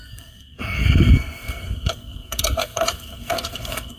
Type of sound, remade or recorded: remade